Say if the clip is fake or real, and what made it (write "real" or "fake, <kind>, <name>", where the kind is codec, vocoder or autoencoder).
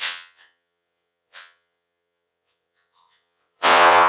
fake, vocoder, WaveNeXt